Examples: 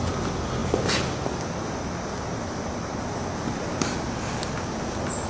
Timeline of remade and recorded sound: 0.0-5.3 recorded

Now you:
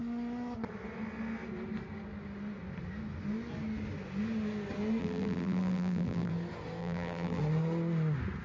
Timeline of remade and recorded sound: 0.0-5.0 recorded; 5.0-6.3 remade; 6.3-6.8 recorded; 6.8-7.4 remade; 7.4-8.4 recorded